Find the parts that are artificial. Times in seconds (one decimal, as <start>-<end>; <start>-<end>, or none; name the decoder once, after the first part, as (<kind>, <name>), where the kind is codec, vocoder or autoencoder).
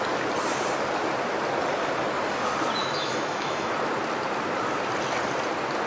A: 2.8-3.7 (autoencoder, DAC-VAE)